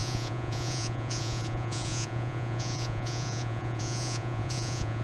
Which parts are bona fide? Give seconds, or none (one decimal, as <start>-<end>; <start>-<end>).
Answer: none

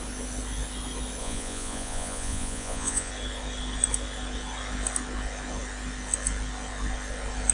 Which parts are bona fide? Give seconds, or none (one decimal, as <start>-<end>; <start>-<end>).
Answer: 0.0-1.2; 3.1-7.5

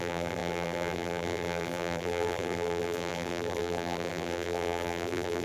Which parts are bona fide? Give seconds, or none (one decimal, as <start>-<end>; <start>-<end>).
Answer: none

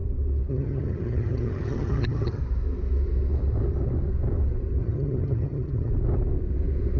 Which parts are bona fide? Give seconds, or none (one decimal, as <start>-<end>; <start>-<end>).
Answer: 0.0-0.5; 2.4-4.8; 5.9-7.0